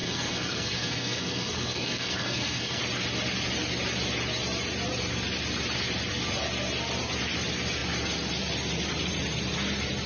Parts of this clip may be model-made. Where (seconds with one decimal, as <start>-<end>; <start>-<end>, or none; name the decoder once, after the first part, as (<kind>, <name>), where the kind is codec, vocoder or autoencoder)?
0.0-2.8 (codec, SNAC)